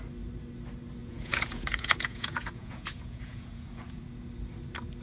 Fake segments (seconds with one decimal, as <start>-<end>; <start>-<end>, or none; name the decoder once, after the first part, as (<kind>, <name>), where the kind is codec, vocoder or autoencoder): 1.0-4.0 (vocoder, Vocos)